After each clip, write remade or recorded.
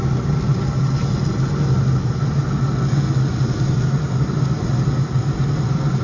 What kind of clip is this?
recorded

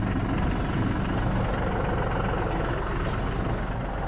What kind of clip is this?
recorded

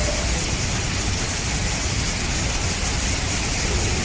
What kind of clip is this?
recorded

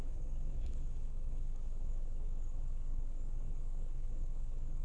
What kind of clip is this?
remade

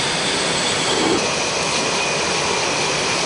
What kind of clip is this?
recorded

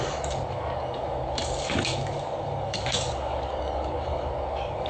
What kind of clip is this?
remade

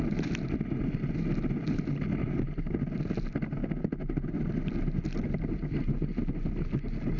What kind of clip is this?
recorded